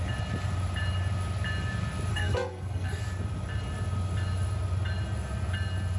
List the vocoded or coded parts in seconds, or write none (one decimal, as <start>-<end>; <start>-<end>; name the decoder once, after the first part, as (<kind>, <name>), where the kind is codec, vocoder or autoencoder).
2.1-3.0 (codec, SNAC)